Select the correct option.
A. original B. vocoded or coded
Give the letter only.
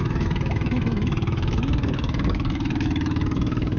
B